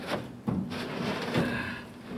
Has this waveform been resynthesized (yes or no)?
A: yes